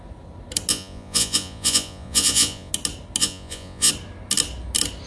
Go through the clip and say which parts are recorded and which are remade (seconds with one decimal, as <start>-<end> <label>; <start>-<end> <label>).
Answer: 0.0-0.7 recorded; 0.7-2.7 remade; 2.7-3.2 recorded; 3.2-3.9 remade; 3.9-5.1 recorded